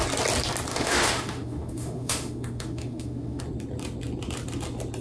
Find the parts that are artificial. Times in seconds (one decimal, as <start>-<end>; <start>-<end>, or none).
0.7-3.4